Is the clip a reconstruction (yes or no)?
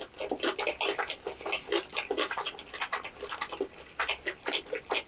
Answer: no